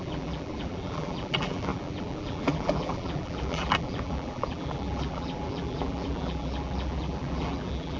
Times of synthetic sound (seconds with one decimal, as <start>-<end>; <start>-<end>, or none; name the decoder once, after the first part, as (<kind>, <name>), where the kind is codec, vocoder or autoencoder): 0.0-8.0 (vocoder, BigVGAN v2)